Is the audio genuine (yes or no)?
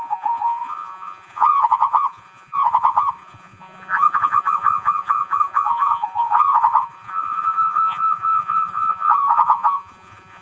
no